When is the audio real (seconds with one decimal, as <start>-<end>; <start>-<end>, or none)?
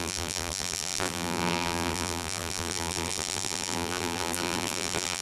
none